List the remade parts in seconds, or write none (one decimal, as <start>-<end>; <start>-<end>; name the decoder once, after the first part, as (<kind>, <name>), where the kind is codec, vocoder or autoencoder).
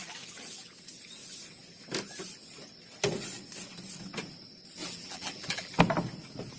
4.8-5.8 (vocoder, BigVGAN v2)